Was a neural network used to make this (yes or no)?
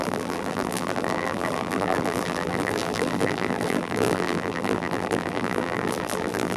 yes